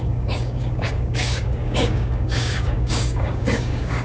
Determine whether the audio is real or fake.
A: fake